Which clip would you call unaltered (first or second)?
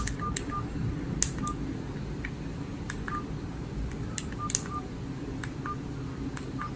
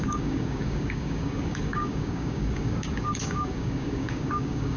first